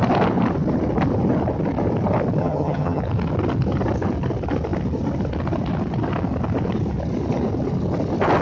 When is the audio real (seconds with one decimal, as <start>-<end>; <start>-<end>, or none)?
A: 0.0-2.4; 3.0-8.4